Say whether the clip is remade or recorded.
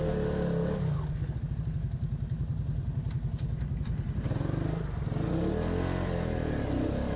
recorded